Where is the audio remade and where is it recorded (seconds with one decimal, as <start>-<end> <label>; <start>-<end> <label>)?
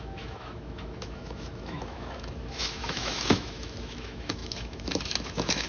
0.0-5.7 remade